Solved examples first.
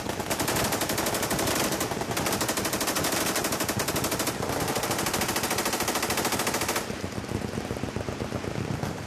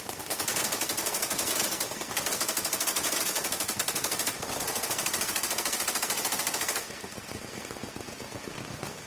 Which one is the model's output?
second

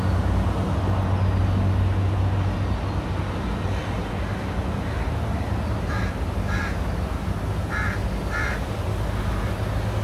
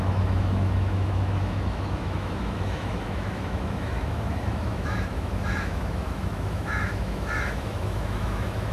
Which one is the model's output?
second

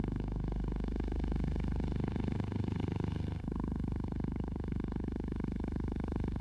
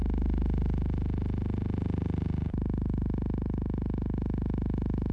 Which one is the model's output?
first